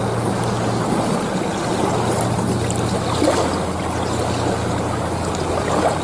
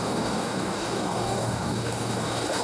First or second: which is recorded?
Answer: first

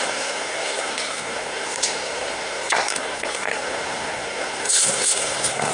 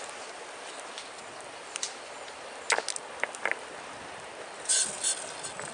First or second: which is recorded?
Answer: second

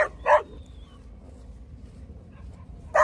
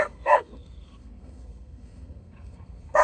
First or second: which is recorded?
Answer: first